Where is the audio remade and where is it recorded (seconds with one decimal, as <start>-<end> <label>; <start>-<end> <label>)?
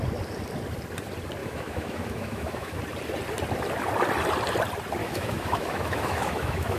0.0-1.4 recorded; 1.4-2.8 remade; 2.8-5.0 recorded; 5.0-6.8 remade